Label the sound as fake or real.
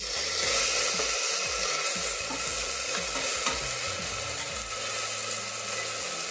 real